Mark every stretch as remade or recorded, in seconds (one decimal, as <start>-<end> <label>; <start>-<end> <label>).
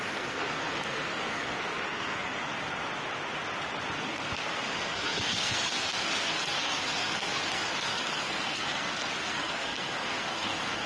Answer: 0.0-2.5 remade; 2.5-4.0 recorded; 4.0-10.9 remade